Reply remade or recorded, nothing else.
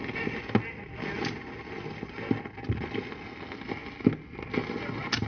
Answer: recorded